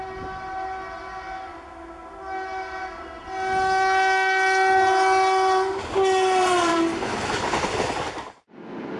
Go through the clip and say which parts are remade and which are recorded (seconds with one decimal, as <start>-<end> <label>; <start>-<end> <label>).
0.0-9.0 recorded